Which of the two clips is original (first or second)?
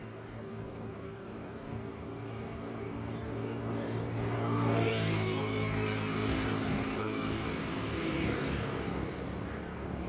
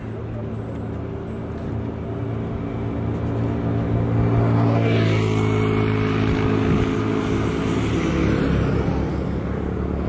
second